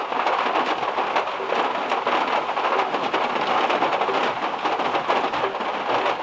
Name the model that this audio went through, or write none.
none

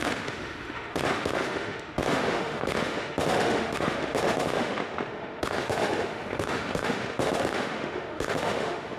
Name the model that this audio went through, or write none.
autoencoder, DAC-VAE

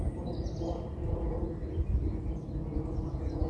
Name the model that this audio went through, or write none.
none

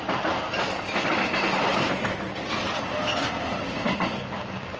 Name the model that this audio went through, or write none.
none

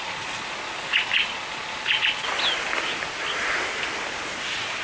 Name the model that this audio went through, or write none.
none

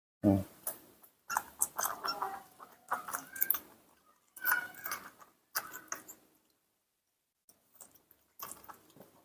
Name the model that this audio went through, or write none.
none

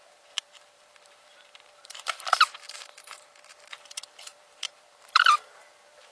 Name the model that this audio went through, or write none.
vocoder, BigVGAN v2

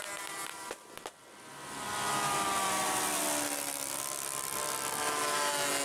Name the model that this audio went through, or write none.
none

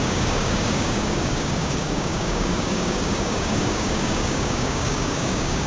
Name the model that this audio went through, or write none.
codec, DAC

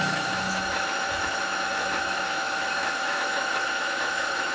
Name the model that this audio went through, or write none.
autoencoder, DAC-VAE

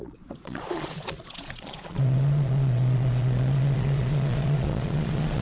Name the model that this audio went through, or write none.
vocoder, Vocos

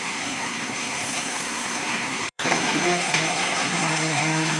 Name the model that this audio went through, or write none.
codec, SNAC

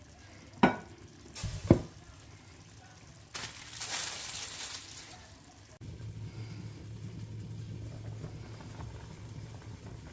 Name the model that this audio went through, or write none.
none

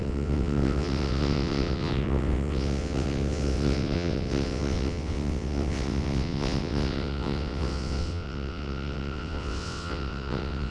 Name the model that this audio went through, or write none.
vocoder, WaveNeXt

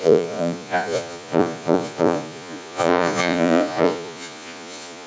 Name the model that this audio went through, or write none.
vocoder, Vocos